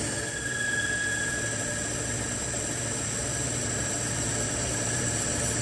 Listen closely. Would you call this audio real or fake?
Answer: real